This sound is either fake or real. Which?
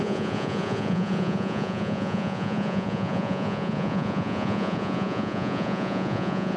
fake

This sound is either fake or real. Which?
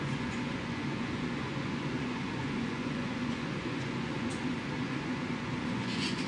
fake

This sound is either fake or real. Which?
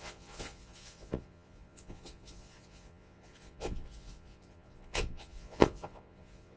fake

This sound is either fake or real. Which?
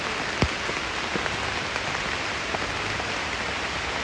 real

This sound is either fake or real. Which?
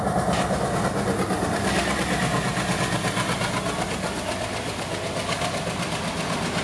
real